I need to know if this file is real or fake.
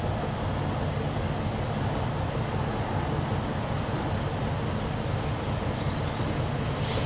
real